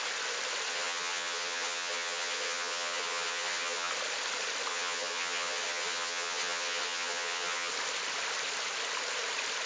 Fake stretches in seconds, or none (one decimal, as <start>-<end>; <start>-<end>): 0.7-3.9; 4.7-7.7